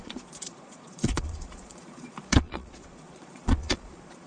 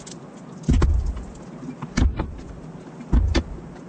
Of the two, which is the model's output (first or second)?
first